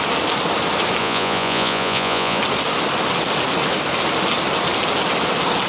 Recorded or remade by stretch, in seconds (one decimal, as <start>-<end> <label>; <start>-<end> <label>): 0.0-1.0 recorded; 1.0-2.4 remade; 2.4-5.7 recorded